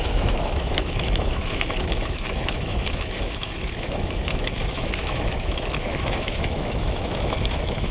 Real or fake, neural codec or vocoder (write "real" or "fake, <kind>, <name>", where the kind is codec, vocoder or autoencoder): fake, autoencoder, DAC-VAE